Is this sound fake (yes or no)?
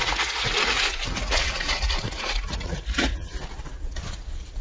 yes